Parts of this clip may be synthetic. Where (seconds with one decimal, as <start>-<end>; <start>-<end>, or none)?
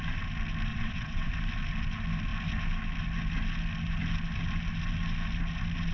0.7-1.3